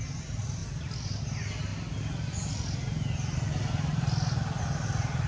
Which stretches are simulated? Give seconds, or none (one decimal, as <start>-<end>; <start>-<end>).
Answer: 0.6-1.2

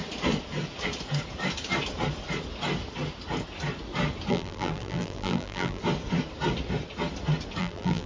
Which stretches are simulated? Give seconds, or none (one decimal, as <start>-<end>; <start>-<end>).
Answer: 4.3-5.8; 7.6-8.1

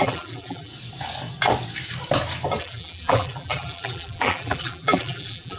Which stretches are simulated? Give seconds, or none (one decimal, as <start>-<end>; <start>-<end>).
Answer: 0.0-0.7; 2.6-5.6

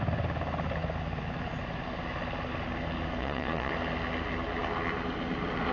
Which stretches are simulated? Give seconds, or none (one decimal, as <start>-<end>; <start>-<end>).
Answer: 3.2-3.7

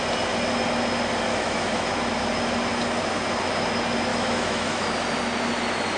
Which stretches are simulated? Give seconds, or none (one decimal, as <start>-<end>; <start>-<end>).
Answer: 1.3-1.9; 4.1-4.9

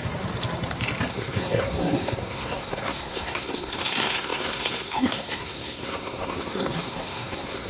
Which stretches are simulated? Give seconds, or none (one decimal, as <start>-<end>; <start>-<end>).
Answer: 1.1-7.7

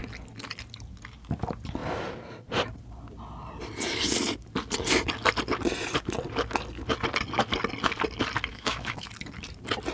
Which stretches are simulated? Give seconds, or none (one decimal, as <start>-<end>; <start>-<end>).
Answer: 8.5-9.1

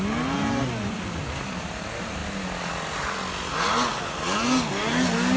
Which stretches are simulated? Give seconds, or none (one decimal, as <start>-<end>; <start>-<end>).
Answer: none